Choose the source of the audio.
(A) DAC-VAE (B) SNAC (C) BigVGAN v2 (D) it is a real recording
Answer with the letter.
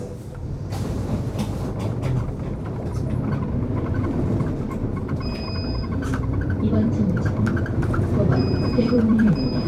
C